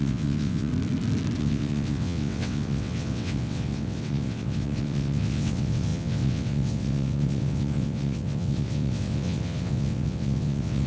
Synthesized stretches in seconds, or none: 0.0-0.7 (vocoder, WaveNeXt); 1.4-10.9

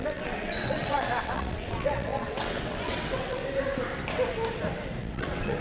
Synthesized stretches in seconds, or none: 0.0-3.4 (vocoder, WaveNeXt); 5.0-5.6

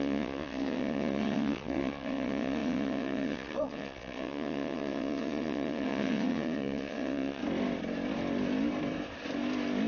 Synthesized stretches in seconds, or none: 0.0-7.4 (vocoder, WaveNeXt)

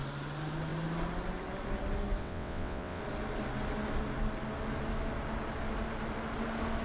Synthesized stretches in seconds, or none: 2.2-3.0 (vocoder, WaveNeXt)

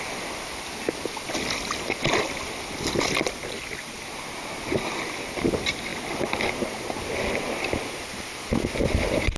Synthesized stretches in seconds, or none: none

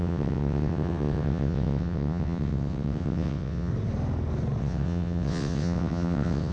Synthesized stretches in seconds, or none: 0.0-3.7 (vocoder, WaveNeXt); 4.6-6.5